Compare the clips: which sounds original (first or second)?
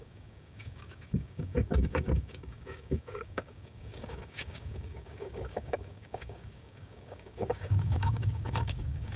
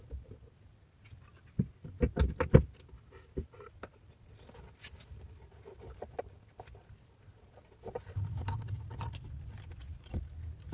second